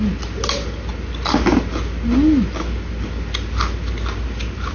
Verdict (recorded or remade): recorded